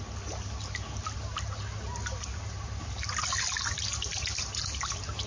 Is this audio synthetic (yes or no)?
no